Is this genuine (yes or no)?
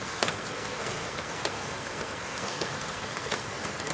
no